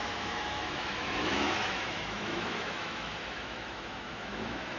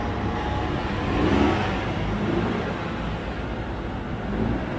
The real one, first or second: second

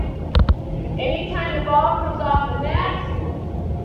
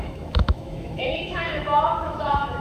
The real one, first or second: first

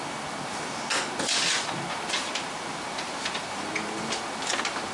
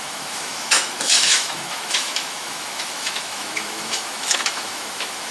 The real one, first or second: first